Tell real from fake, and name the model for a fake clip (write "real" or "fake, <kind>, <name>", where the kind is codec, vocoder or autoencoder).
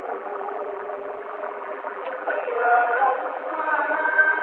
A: fake, vocoder, BigVGAN v2